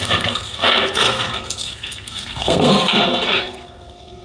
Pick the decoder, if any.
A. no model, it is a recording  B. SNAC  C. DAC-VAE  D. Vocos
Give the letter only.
B